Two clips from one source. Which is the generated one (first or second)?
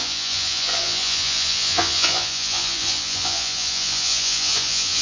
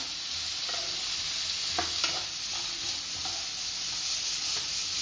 first